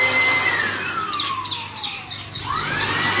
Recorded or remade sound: recorded